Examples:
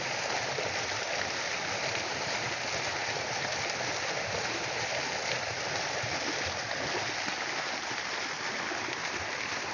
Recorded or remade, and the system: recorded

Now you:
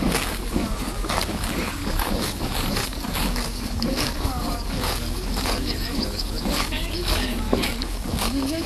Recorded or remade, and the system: remade, codec, DAC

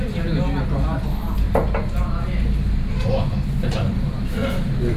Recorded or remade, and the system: recorded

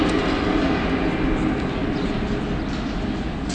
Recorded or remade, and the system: recorded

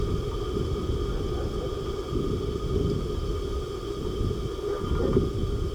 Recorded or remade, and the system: recorded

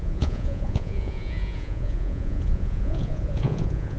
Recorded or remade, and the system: remade, vocoder, Vocos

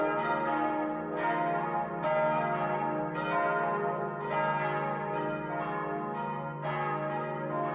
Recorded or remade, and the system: recorded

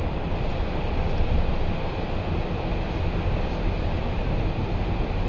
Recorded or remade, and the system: recorded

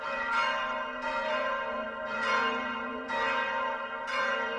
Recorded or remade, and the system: remade, vocoder, Vocos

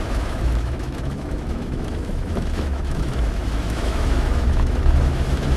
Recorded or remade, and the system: remade, autoencoder, DAC-VAE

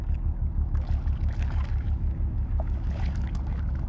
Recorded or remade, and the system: remade, codec, DAC